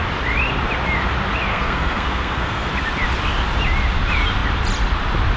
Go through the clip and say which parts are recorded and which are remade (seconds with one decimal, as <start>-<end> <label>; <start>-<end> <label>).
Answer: 0.0-1.5 recorded; 1.5-2.7 remade; 2.7-5.4 recorded